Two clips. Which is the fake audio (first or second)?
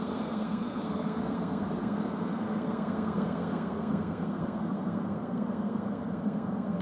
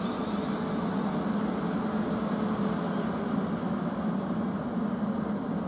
first